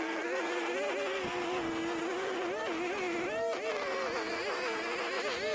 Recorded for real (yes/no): yes